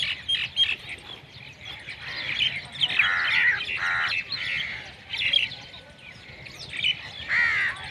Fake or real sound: real